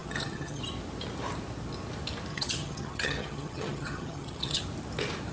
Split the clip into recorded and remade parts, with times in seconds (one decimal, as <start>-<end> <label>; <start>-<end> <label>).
0.0-0.6 remade; 0.6-2.3 recorded; 2.3-4.6 remade; 4.6-5.3 recorded